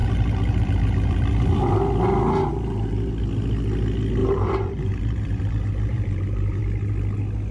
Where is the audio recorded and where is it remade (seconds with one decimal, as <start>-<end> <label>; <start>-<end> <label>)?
0.0-1.7 remade; 1.7-2.5 recorded; 2.5-3.1 remade; 3.1-4.2 recorded; 4.2-6.6 remade; 6.6-7.5 recorded